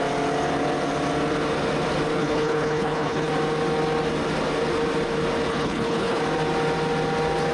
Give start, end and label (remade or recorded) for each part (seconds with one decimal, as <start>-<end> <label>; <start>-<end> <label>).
0.0-2.2 recorded; 2.2-3.3 remade; 3.3-5.5 recorded; 5.5-6.2 remade; 6.2-7.5 recorded